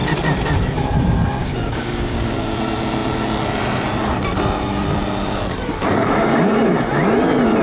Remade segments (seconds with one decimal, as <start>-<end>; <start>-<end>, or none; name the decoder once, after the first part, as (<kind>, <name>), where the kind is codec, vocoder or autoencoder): 1.4-2.5 (codec, DAC)